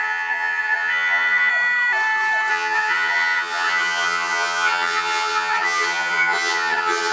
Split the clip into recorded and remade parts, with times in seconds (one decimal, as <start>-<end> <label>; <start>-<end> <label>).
0.0-1.5 remade; 1.5-2.5 recorded; 2.5-7.1 remade